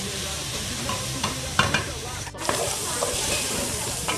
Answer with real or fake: fake